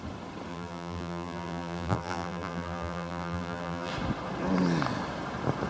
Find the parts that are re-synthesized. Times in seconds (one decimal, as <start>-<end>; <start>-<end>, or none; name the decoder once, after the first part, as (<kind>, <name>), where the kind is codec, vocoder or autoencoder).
0.5-3.9 (vocoder, BigVGAN v2)

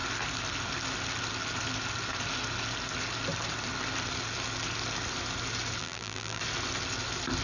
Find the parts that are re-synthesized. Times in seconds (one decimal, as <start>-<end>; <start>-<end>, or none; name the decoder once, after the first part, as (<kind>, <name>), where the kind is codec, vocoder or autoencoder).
5.8-6.4 (vocoder, BigVGAN v2)

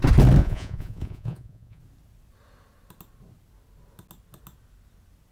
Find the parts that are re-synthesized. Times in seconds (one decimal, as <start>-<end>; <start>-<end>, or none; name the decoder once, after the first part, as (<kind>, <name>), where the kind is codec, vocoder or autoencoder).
0.4-1.8 (vocoder, Vocos)

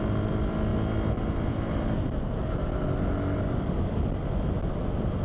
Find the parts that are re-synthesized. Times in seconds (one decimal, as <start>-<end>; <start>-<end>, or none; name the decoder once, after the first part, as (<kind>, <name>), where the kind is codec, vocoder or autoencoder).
none

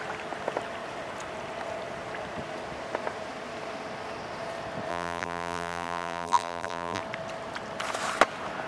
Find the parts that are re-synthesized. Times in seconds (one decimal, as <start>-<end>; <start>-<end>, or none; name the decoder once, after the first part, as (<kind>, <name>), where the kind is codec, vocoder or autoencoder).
4.9-7.0 (vocoder, BigVGAN v2)

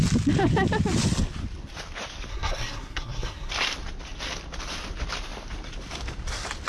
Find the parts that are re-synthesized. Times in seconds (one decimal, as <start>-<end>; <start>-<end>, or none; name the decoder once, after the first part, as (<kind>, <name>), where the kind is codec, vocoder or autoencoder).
2.3-3.5 (codec, SNAC)

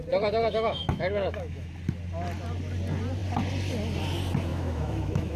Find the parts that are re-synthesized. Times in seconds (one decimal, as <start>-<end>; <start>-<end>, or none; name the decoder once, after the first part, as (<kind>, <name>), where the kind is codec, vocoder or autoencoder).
0.4-1.7 (autoencoder, DAC-VAE); 4.5-5.4